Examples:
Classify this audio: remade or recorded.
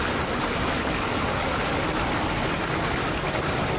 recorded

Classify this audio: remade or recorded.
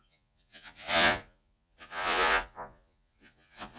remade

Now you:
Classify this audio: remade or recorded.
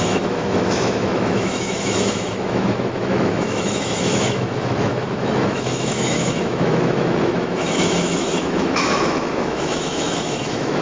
remade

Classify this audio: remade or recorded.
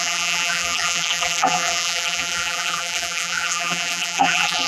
remade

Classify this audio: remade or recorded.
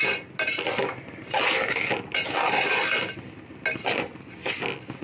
recorded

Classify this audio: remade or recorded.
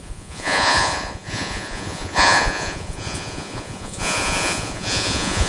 remade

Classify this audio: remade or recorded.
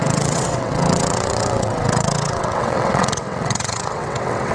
remade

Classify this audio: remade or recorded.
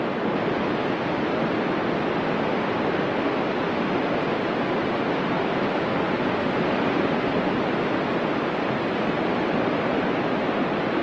recorded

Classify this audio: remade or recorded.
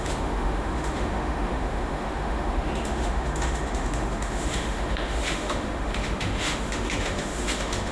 remade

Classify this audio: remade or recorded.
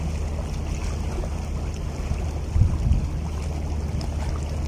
recorded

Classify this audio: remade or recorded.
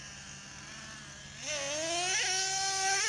recorded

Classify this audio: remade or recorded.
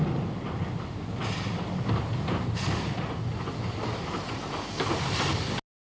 recorded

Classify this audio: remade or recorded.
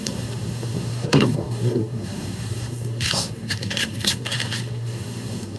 remade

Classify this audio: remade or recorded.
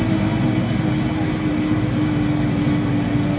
recorded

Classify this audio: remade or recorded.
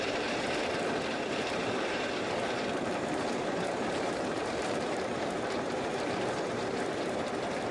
remade